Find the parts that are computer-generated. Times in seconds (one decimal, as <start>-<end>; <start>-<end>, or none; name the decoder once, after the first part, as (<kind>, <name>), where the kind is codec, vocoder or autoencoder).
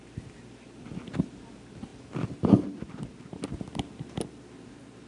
none